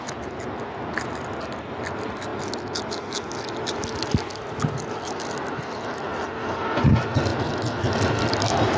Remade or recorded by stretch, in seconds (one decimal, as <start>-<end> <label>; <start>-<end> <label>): 0.0-2.3 remade; 2.3-4.9 recorded; 4.9-6.1 remade; 6.1-6.8 recorded; 6.8-7.3 remade; 7.3-7.9 recorded; 7.9-8.8 remade